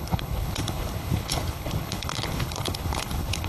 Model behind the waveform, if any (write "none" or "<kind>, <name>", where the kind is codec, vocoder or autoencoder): codec, HILCodec